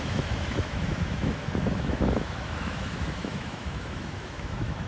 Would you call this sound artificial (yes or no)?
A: yes